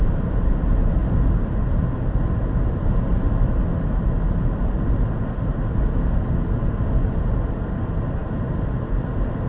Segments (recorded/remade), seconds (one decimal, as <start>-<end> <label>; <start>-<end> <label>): 0.0-9.5 recorded